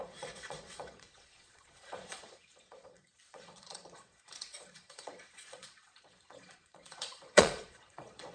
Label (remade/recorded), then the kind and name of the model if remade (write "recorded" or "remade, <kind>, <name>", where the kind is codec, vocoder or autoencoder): remade, vocoder, Vocos